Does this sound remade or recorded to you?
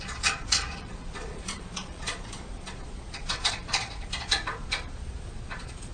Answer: remade